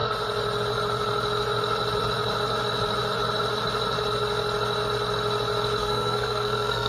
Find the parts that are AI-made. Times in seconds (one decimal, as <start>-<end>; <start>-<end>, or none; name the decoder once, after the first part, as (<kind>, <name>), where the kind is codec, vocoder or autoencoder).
5.8-6.9 (codec, SNAC)

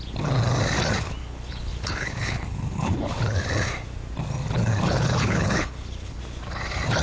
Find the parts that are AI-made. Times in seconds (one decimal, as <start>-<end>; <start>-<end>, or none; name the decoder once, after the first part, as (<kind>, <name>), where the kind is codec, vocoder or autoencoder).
1.2-3.2 (codec, HILCodec); 4.7-6.2